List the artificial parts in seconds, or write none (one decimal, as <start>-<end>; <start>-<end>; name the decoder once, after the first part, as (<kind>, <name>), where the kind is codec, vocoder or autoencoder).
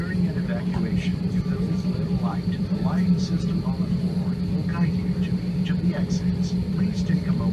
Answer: 1.1-3.6 (vocoder, BigVGAN v2)